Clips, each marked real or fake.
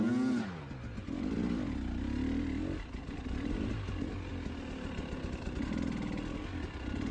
real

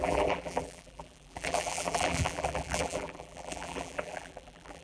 fake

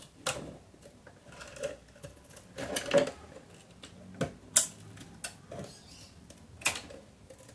real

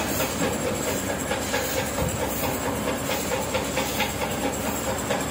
real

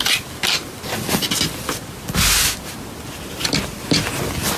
real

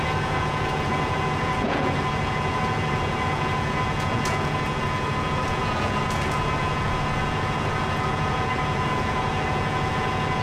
fake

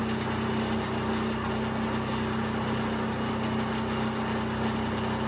real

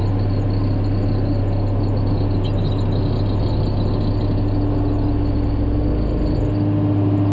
real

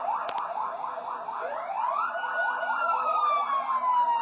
real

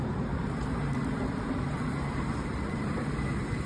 fake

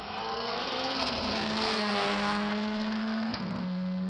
fake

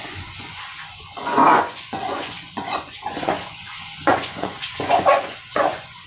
fake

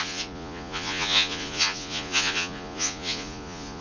fake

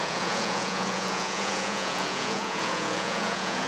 fake